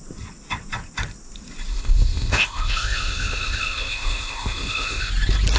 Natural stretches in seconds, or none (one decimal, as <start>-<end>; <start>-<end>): 0.0-1.7; 5.1-5.6